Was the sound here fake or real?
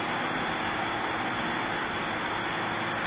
real